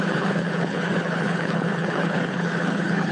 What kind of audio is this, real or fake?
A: fake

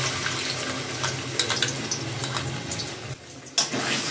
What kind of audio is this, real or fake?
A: real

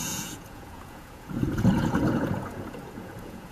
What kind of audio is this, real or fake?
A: fake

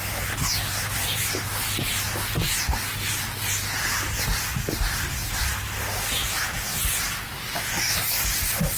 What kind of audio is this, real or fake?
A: real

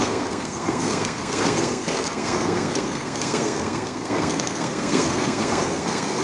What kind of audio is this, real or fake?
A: fake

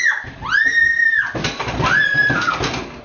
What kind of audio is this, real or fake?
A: real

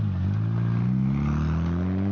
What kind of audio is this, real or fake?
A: real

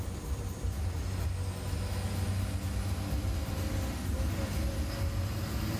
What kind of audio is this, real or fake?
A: real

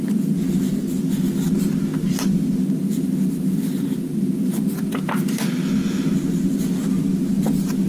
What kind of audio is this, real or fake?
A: real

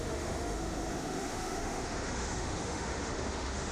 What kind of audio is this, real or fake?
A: fake